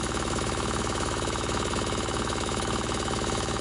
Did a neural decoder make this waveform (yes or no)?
yes